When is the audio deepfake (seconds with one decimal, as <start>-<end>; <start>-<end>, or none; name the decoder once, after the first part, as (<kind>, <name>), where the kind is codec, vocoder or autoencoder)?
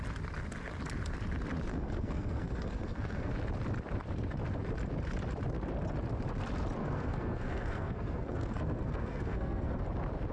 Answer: 1.7-3.3 (codec, SNAC); 6.8-9.8